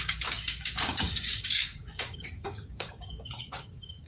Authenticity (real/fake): fake